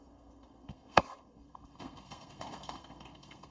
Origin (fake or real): fake